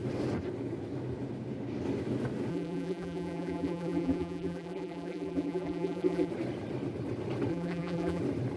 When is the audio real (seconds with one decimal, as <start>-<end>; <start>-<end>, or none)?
0.0-2.5; 6.3-7.5; 8.2-8.6